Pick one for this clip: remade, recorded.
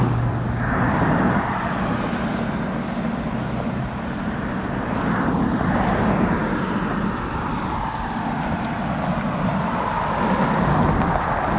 recorded